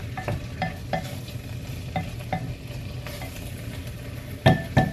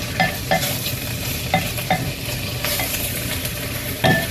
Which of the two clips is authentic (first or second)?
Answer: first